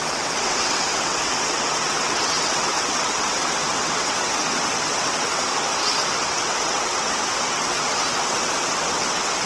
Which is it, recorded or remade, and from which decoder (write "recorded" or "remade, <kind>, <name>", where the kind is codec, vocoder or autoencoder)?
remade, vocoder, WaveNeXt